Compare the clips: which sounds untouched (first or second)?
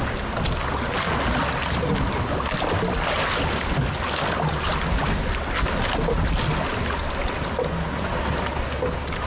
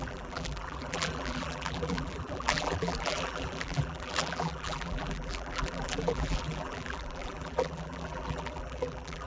first